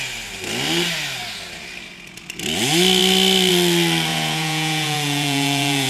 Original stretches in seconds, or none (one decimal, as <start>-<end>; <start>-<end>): 0.0-4.1